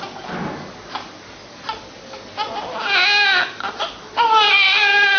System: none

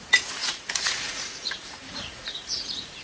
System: vocoder, Vocos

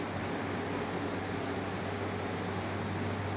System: none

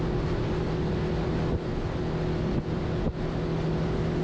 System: none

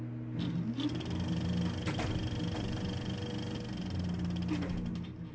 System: none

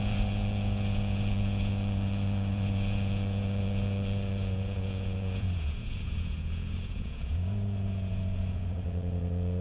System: vocoder, Vocos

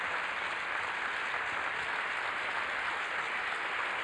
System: none